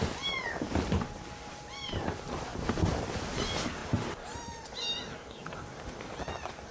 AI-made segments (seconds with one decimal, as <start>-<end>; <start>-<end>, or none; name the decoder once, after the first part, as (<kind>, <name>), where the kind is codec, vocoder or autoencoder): none